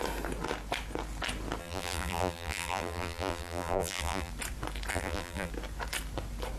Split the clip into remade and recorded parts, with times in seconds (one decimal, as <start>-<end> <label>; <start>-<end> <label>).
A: 0.0-1.6 recorded; 1.6-4.3 remade; 4.3-4.9 recorded; 4.9-5.5 remade; 5.5-6.6 recorded